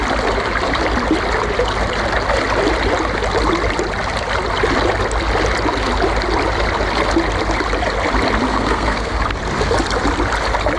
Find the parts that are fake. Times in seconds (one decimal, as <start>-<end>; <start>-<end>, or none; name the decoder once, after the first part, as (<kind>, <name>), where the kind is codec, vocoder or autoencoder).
8.5-9.2 (codec, SNAC)